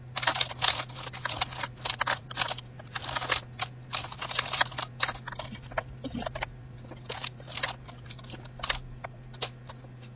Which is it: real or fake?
real